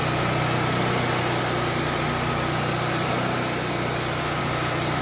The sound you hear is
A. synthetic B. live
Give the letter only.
B